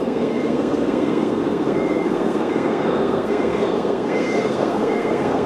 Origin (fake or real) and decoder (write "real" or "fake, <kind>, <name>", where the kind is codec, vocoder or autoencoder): fake, codec, SNAC